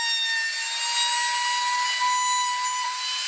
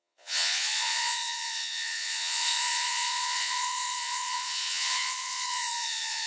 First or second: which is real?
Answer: first